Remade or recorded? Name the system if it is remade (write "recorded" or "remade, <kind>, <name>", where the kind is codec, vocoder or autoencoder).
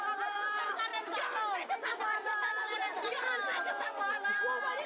recorded